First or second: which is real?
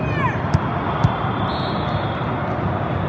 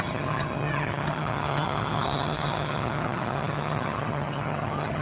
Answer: first